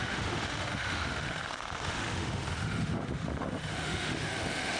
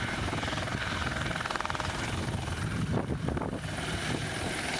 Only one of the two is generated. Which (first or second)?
first